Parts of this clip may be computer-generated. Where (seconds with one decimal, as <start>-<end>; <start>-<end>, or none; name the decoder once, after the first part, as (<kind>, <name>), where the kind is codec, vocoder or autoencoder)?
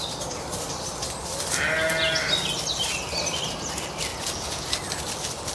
4.1-4.7 (vocoder, Vocos)